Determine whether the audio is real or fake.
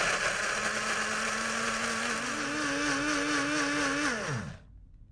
real